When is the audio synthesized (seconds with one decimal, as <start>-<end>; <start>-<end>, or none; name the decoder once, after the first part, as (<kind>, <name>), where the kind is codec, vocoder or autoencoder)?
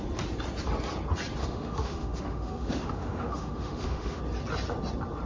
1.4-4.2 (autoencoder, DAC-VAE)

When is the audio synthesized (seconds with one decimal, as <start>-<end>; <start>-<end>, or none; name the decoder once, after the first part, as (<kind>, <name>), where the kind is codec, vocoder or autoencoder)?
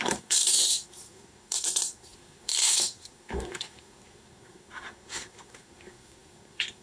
0.0-6.8 (codec, SNAC)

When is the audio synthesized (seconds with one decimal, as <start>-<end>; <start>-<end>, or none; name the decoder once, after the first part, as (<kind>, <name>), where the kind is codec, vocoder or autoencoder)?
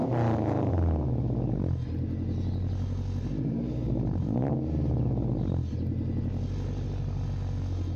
0.0-0.7 (vocoder, BigVGAN v2)